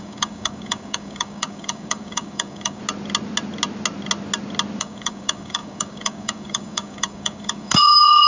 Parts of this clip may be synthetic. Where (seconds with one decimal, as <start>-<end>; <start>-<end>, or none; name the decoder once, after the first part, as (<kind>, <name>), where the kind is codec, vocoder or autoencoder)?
0.0-2.8 (codec, DAC); 4.8-8.3